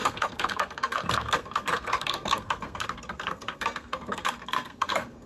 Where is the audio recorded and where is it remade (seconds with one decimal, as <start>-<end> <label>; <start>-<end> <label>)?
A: 0.0-5.3 remade